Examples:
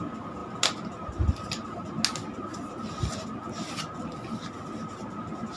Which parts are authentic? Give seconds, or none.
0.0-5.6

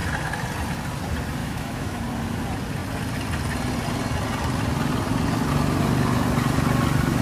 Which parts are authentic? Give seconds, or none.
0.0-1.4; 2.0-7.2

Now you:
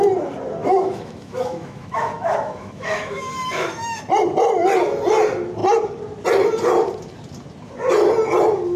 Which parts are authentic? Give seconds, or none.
0.0-0.6; 4.0-8.8

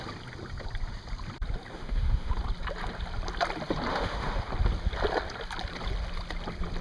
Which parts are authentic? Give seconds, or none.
0.0-1.7; 2.3-3.9; 4.5-6.8

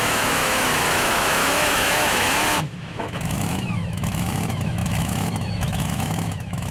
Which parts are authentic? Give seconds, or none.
none

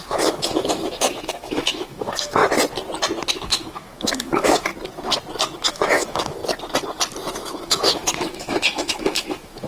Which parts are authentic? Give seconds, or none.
2.4-3.3; 4.7-5.7; 6.4-7.3